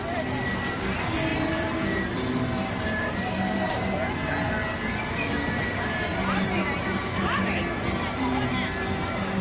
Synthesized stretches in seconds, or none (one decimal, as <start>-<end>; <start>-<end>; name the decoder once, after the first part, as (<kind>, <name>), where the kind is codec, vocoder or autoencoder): 1.3-3.7 (vocoder, BigVGAN v2); 6.1-7.4